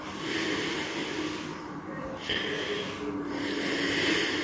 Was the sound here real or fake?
real